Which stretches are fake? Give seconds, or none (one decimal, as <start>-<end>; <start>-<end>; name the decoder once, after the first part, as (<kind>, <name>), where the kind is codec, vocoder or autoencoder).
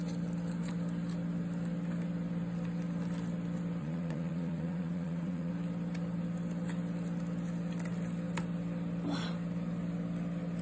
3.8-5.5 (vocoder, Vocos)